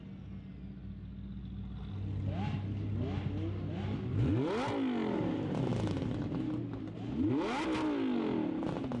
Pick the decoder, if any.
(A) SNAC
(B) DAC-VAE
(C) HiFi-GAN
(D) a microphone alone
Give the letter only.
D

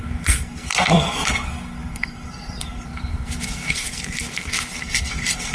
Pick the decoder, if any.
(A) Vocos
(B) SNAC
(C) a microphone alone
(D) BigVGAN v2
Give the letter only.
B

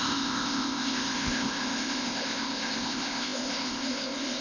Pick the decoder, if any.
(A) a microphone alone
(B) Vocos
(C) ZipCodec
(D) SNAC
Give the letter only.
C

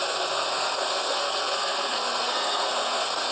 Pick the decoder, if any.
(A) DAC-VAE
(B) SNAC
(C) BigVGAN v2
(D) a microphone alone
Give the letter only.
B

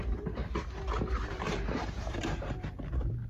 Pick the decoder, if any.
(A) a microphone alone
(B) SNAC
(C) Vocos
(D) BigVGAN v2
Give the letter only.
D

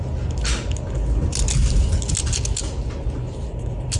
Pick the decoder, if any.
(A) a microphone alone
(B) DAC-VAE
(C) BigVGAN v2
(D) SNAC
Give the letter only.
A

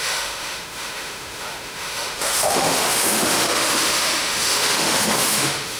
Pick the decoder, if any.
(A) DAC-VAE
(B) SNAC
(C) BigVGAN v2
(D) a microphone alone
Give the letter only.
A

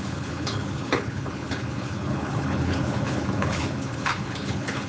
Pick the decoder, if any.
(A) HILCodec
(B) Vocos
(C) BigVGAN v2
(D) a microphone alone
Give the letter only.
A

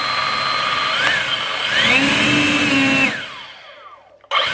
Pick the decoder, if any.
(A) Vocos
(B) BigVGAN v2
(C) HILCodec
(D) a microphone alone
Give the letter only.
D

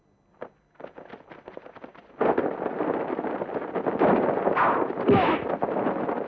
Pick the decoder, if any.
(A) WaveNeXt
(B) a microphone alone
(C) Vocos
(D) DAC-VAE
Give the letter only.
B